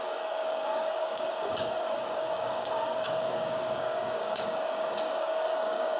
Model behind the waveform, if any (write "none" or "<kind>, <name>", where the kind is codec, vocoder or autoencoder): codec, DAC